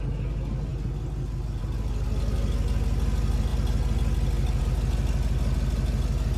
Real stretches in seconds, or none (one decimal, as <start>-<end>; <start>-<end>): 0.0-6.4